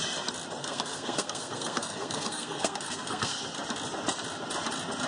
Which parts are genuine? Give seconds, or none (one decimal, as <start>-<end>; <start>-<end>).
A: 0.0-0.6; 3.4-5.1